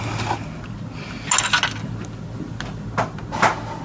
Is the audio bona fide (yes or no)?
yes